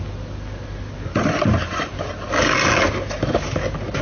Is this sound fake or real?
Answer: real